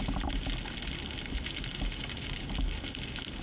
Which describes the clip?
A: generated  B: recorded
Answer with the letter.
B